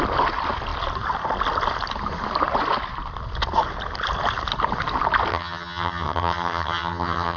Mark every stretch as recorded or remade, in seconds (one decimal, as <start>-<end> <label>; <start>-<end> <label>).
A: 0.0-5.3 recorded; 5.3-7.4 remade